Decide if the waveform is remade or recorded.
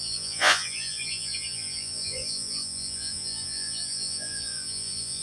remade